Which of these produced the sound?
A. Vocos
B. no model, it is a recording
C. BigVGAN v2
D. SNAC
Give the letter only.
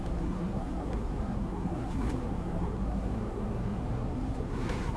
D